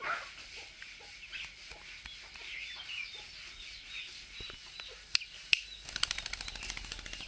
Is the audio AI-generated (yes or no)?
no